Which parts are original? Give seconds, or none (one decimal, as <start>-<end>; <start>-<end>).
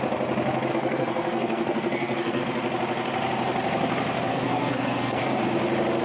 0.0-0.7; 2.4-4.3; 5.4-6.0